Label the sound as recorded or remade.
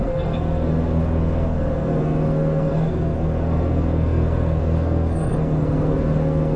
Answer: remade